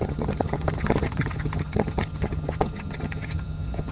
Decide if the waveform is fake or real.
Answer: fake